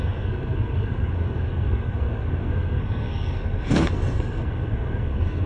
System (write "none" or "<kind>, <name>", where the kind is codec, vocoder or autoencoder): codec, SNAC